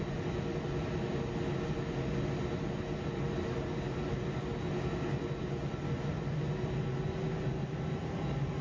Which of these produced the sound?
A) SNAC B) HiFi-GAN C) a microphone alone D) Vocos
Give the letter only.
C